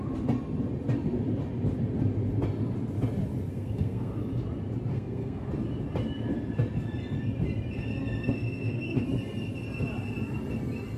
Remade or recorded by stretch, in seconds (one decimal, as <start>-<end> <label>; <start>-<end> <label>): 0.0-3.5 recorded; 3.5-4.2 remade; 4.2-4.9 recorded; 4.9-5.5 remade; 5.5-8.2 recorded; 8.2-9.0 remade; 9.0-11.0 recorded